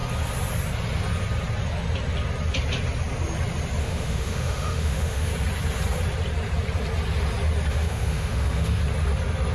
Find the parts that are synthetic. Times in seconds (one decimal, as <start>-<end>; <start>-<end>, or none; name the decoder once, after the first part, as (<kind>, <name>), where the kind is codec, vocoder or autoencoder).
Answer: 3.8-5.3 (autoencoder, DAC-VAE); 7.7-8.8